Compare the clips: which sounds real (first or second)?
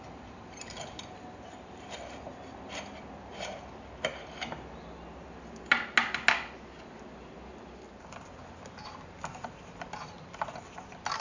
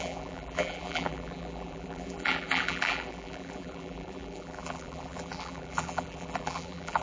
first